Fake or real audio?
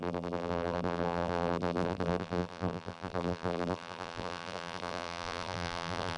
fake